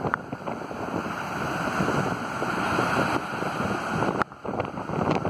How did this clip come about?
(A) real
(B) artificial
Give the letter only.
A